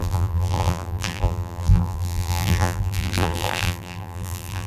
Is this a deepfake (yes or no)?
yes